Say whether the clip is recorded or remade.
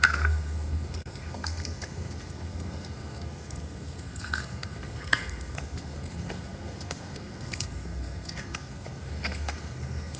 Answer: remade